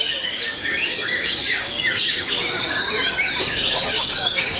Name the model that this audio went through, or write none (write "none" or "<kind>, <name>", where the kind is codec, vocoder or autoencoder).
codec, DAC